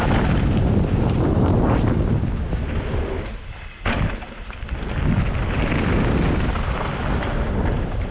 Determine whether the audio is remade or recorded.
recorded